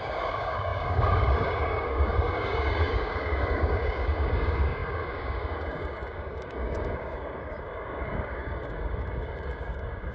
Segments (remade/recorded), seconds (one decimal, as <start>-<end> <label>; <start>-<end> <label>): 0.0-10.1 remade